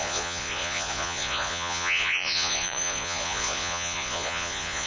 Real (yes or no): no